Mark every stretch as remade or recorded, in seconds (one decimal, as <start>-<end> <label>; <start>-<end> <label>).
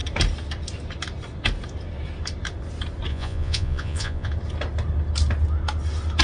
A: 0.0-3.1 recorded; 3.1-4.3 remade; 4.3-6.2 recorded